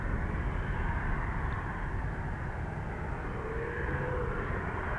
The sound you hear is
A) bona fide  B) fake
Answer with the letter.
A